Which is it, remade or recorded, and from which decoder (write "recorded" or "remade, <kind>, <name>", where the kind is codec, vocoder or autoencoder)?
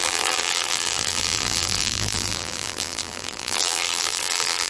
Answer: remade, vocoder, BigVGAN v2